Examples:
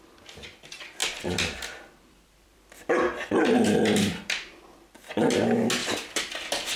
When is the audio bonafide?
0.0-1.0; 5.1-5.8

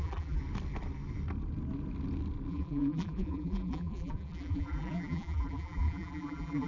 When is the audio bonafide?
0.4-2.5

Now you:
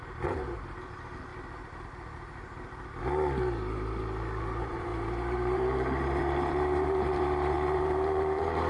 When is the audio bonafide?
1.3-4.4